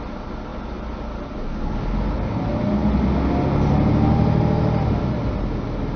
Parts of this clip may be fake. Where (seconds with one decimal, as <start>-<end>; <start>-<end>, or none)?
none